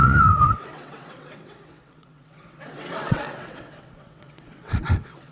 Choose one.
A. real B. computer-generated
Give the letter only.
B